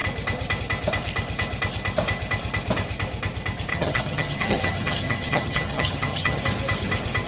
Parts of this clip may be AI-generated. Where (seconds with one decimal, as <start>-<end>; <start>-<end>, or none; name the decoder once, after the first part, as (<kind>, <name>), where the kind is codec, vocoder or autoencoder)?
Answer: 3.7-6.4 (vocoder, HiFi-GAN)